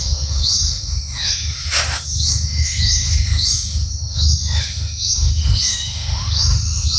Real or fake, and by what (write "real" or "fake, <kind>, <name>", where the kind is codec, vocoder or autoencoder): fake, autoencoder, DAC-VAE